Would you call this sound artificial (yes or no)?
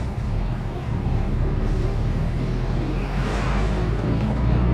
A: yes